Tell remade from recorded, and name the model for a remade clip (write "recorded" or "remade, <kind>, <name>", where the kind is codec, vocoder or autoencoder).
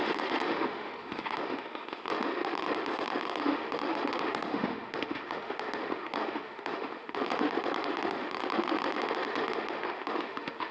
remade, autoencoder, DAC-VAE